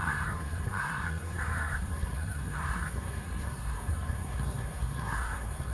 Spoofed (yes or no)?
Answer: yes